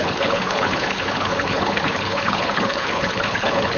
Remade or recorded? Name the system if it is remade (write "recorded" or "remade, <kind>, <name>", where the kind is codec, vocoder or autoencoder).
remade, codec, HILCodec